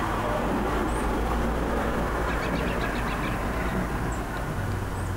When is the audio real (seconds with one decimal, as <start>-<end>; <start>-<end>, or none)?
0.0-5.2